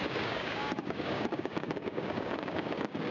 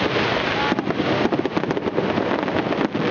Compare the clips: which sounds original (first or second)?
second